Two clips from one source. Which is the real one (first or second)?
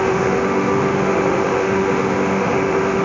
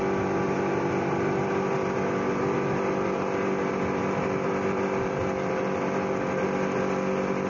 second